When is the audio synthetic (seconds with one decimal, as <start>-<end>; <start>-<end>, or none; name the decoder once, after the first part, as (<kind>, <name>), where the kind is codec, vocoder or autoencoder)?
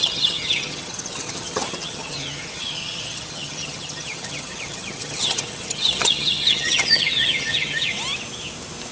0.0-7.9 (vocoder, HiFi-GAN)